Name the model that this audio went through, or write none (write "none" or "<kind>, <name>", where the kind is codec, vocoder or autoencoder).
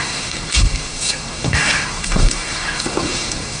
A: codec, SNAC